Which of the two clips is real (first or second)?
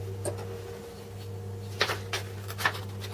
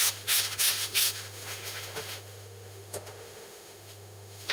first